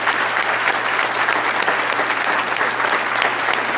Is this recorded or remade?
recorded